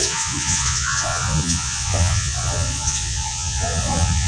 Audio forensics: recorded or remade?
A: remade